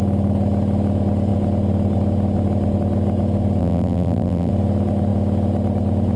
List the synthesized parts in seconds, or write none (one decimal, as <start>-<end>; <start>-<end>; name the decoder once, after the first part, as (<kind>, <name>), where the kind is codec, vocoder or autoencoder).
3.6-4.5 (vocoder, BigVGAN v2)

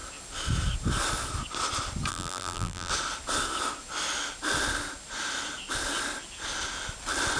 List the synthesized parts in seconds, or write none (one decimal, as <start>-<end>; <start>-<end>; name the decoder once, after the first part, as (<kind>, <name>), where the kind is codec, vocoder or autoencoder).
2.1-2.9 (vocoder, BigVGAN v2)